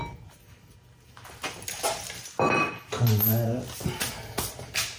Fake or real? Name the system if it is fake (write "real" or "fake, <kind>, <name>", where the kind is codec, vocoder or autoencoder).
real